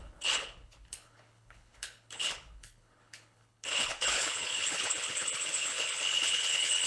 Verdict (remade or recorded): remade